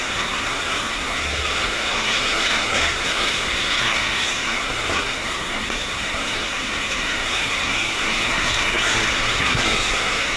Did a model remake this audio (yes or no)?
yes